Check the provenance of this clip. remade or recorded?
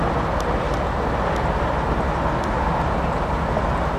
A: recorded